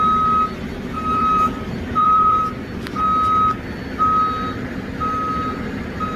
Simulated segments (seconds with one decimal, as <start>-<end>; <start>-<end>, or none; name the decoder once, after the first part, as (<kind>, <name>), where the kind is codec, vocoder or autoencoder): 1.1-2.4 (vocoder, BigVGAN v2)